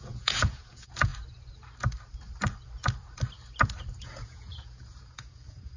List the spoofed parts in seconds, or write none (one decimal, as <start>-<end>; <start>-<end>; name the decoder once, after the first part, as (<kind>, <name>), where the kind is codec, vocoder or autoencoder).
0.0-1.1 (vocoder, Vocos); 4.0-5.8